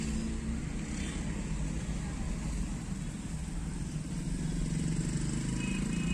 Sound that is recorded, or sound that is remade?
recorded